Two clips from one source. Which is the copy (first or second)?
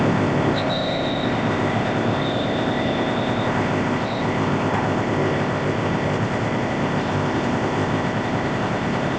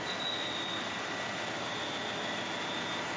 first